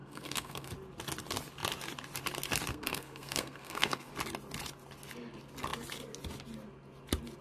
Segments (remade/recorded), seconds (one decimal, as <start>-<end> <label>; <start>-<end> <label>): 0.0-0.7 remade; 0.7-2.7 recorded; 2.7-4.1 remade; 4.1-7.4 recorded